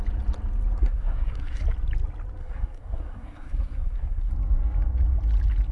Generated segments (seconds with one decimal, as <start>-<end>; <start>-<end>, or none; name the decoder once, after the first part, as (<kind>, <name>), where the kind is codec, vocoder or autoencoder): 0.8-1.6 (codec, SNAC); 2.4-4.3